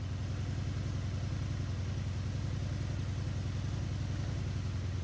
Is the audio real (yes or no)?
yes